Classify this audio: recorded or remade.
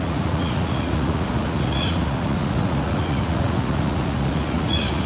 remade